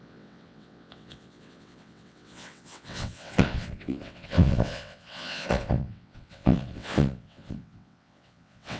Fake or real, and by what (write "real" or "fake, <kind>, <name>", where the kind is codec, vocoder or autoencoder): fake, vocoder, WaveNeXt